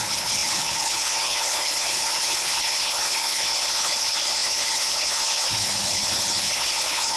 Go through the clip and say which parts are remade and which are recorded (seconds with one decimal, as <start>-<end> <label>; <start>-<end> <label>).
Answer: 0.0-7.2 remade